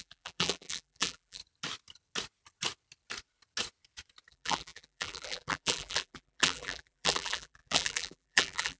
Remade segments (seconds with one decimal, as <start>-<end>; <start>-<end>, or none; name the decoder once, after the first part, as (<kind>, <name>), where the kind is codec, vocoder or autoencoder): 0.0-1.4 (vocoder, BigVGAN v2); 4.3-8.8

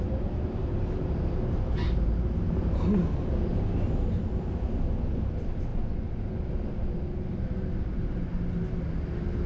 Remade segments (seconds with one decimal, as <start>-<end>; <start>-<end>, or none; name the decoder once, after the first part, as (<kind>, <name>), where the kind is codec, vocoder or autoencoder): none